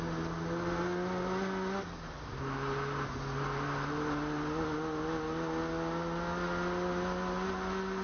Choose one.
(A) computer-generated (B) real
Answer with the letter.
B